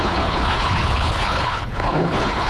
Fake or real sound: fake